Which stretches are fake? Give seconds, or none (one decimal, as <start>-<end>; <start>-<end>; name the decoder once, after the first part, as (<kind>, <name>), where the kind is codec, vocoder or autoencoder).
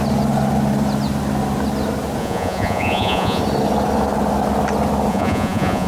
2.2-3.4 (vocoder, Vocos); 5.1-5.9